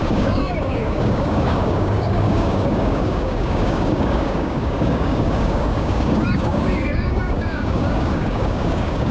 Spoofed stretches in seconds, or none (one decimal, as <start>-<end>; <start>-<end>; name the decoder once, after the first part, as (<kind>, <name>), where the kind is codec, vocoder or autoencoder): 0.0-9.1 (codec, DAC)